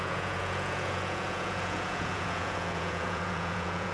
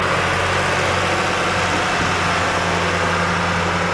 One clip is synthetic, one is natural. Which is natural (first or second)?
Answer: second